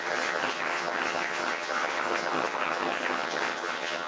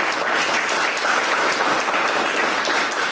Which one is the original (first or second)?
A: second